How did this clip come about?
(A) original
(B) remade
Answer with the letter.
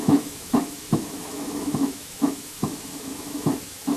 B